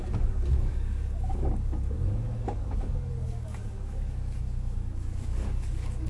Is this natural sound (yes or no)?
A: no